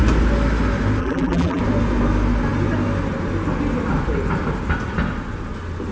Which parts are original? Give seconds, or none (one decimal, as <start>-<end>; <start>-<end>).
0.0-1.0; 1.6-5.9